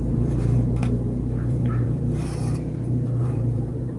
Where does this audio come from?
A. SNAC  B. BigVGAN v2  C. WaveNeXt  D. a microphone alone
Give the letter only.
B